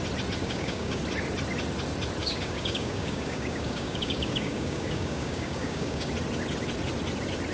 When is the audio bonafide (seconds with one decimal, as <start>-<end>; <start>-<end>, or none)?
0.0-0.4; 1.0-2.2; 6.1-7.5